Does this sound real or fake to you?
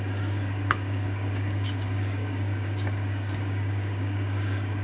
fake